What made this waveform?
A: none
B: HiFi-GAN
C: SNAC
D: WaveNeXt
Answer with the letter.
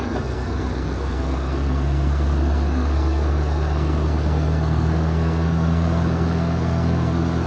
C